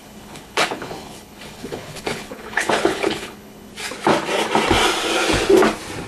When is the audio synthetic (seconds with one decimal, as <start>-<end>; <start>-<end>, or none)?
0.0-3.7